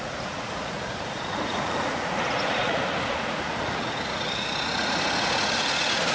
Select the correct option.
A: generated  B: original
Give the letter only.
A